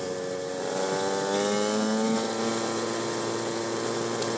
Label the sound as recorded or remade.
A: recorded